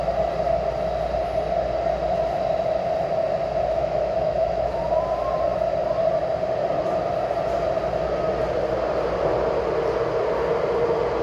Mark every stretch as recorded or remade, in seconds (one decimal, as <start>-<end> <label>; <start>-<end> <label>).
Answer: 0.0-3.8 recorded; 3.8-4.8 remade; 4.8-11.2 recorded